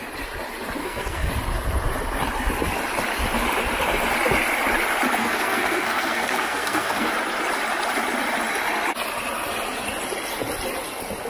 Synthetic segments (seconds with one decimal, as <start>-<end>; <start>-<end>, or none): 0.8-1.3; 5.2-7.1